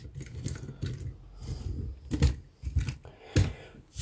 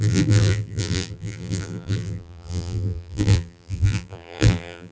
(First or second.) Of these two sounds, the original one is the first